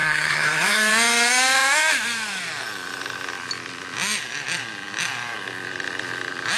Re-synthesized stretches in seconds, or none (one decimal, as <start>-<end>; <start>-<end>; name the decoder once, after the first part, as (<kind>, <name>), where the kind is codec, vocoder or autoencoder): 0.0-0.9 (codec, SNAC)